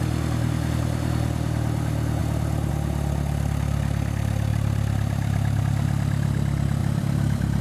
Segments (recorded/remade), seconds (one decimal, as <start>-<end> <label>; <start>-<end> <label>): 0.0-4.5 recorded; 4.5-5.6 remade; 5.6-6.8 recorded; 6.8-7.6 remade